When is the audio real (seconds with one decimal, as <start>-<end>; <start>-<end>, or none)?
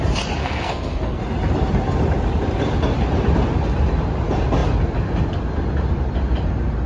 0.0-0.4; 1.2-6.9